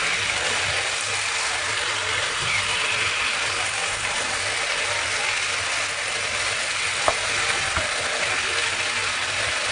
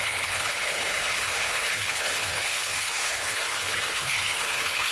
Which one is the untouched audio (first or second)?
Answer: first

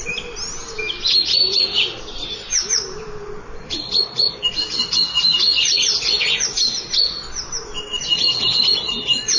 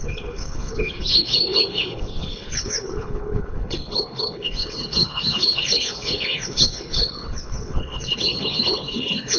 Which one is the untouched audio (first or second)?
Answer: first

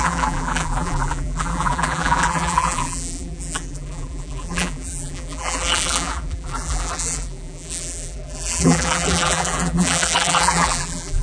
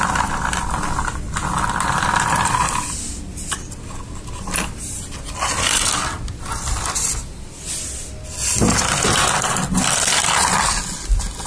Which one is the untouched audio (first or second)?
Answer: second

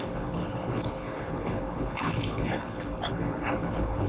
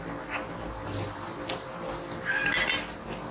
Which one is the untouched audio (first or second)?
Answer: second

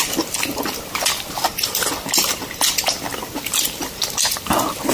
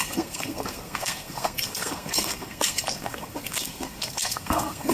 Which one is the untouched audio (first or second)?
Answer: first